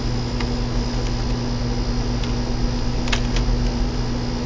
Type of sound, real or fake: real